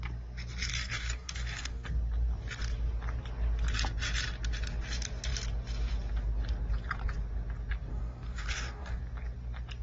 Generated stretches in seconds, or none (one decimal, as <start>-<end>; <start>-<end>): 0.7-1.9; 7.9-9.0